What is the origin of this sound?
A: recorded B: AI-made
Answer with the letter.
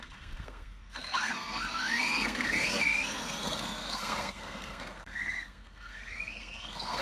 B